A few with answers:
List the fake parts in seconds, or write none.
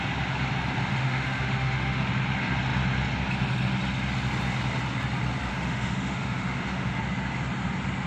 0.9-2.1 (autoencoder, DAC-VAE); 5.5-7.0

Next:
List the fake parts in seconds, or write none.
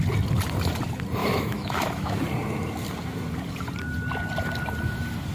1.2-2.2 (autoencoder, DAC-VAE)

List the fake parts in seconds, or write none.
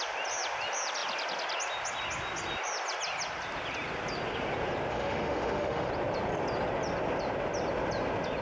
4.9-5.9 (autoencoder, DAC-VAE)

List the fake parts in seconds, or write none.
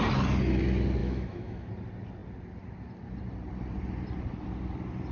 1.0-1.7 (autoencoder, DAC-VAE)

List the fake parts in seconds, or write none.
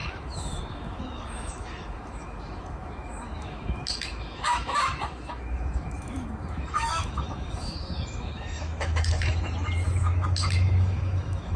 0.0-11.6 (autoencoder, DAC-VAE)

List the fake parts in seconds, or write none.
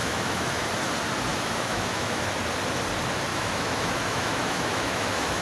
0.0-0.7 (autoencoder, DAC-VAE); 1.3-2.2; 3.3-5.4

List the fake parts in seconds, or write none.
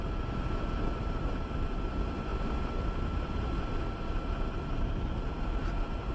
none